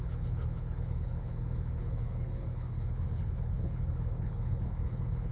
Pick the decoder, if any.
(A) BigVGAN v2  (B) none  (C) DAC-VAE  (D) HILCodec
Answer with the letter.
D